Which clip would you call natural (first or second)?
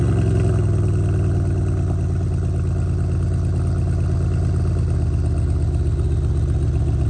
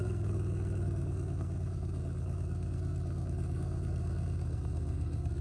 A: first